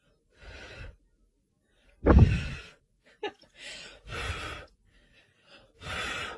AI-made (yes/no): no